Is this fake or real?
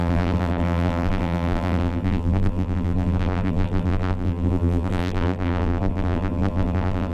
fake